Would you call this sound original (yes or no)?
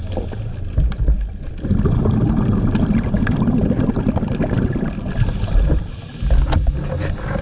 yes